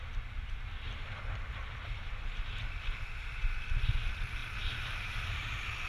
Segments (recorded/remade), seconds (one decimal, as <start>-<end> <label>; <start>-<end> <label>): 0.0-4.4 recorded; 4.4-5.5 remade; 5.5-5.9 recorded